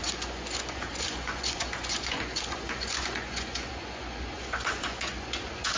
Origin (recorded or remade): remade